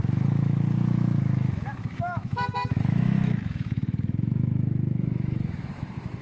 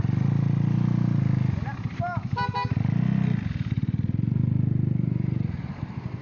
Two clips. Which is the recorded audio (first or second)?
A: second